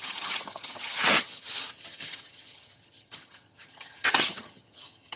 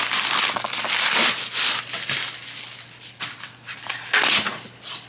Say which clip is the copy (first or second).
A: first